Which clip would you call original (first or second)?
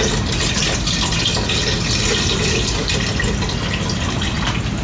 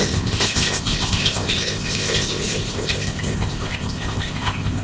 first